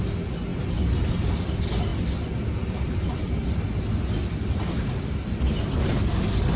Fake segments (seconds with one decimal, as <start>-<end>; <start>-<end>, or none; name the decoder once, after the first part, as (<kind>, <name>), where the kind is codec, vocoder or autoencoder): none